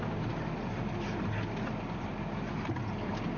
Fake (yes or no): no